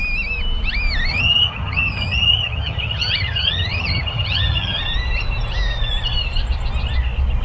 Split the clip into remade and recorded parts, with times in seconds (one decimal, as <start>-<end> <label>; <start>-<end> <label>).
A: 0.0-1.1 recorded; 1.1-4.8 remade; 4.8-7.4 recorded